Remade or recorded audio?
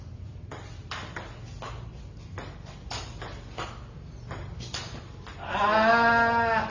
recorded